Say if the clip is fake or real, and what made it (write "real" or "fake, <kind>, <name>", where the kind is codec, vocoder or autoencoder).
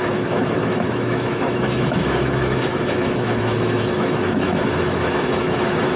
fake, autoencoder, DAC-VAE